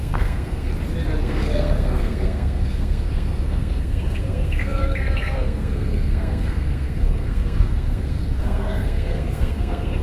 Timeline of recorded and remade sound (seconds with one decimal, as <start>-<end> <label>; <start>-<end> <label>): 0.0-0.7 remade; 0.7-1.2 recorded; 1.2-10.0 remade